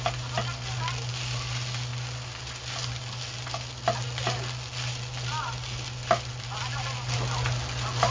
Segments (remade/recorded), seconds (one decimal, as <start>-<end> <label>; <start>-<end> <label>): 0.0-8.1 recorded